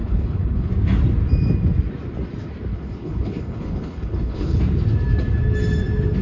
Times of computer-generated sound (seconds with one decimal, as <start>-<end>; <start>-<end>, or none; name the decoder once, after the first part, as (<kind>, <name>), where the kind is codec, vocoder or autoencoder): 0.0-0.7 (codec, HILCodec); 2.7-4.6